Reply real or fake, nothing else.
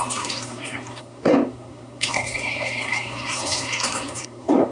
fake